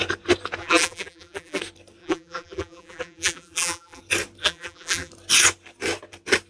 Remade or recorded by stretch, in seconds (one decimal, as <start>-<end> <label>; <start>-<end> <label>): 0.0-0.6 recorded; 0.6-1.6 remade; 1.6-2.0 recorded; 2.0-4.0 remade; 4.0-4.4 recorded; 4.4-5.1 remade; 5.1-6.5 recorded

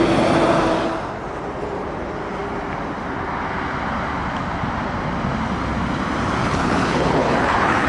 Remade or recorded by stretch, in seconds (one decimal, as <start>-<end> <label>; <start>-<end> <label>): 0.0-6.4 recorded; 6.4-7.9 remade

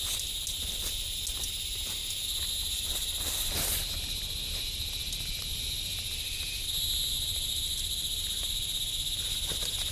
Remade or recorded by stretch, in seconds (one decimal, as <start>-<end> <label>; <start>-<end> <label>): 0.0-9.9 recorded

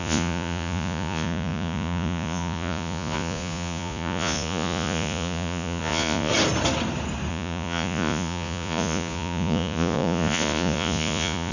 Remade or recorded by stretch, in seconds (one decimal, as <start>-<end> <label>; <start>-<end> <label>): 0.0-6.3 remade; 6.3-7.3 recorded; 7.3-11.5 remade